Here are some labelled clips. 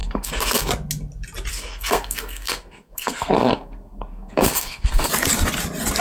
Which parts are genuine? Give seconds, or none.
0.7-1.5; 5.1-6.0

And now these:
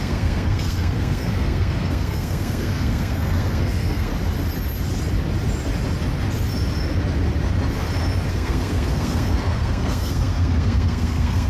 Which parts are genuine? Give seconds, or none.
4.1-8.3